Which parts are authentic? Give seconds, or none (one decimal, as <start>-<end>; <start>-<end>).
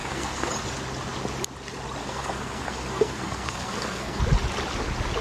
0.5-2.0; 4.2-5.2